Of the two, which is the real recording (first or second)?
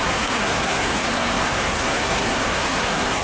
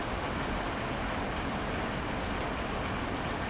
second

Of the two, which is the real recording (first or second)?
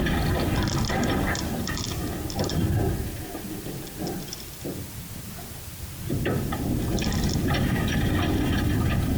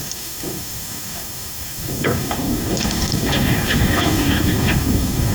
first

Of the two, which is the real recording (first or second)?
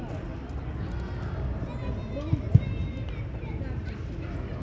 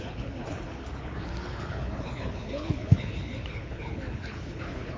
first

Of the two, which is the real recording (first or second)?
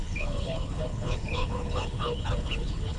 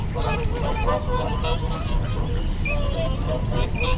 second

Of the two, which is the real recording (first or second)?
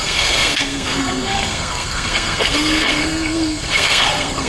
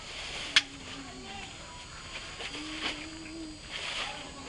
second